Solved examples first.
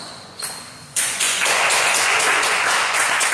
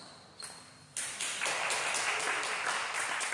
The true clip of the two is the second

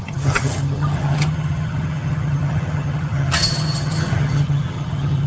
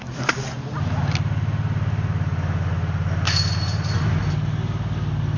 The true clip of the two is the second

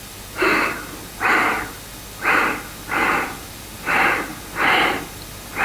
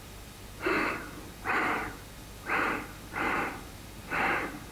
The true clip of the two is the first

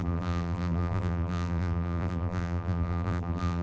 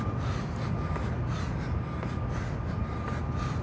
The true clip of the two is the second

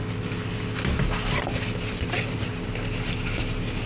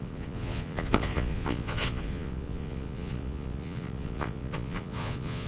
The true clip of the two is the first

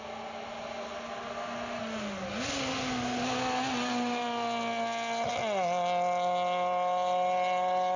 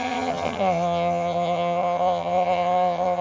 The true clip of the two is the first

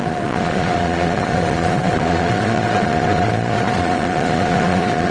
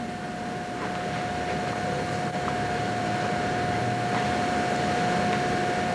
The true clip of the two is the second